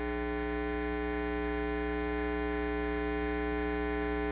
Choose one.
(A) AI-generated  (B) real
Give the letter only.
B